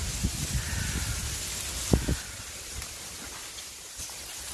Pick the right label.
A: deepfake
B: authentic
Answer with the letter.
B